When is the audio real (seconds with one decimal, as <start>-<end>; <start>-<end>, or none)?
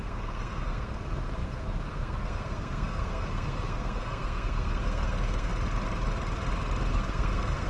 5.5-6.9